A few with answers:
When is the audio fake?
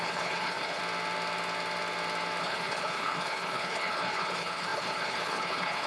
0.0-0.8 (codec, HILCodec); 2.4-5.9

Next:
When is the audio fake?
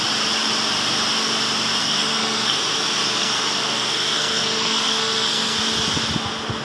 1.8-2.6 (codec, SNAC); 3.0-5.6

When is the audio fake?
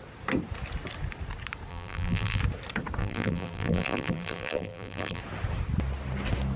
1.7-2.4 (vocoder, BigVGAN v2); 3.0-5.2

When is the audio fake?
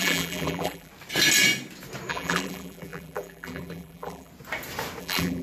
0.0-0.9 (vocoder, BigVGAN v2); 2.1-4.3; 5.0-5.4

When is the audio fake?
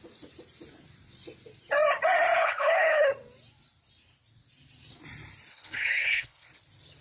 2.4-3.1 (codec, HILCodec); 5.5-6.5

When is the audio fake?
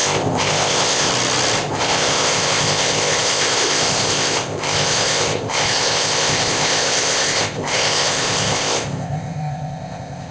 0.0-1.1 (codec, ZipCodec); 1.7-10.3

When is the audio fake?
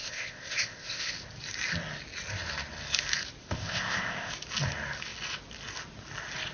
0.0-1.1 (codec, ZipCodec); 3.4-4.3